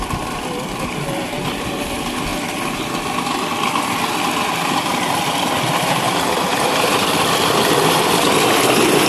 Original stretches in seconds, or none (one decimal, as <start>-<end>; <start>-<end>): 0.0-9.1